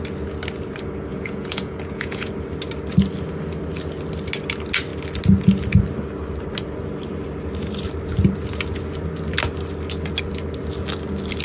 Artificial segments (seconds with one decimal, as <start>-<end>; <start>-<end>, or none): 1.1-2.3